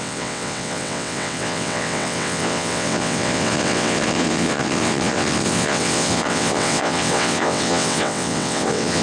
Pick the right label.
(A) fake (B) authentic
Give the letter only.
A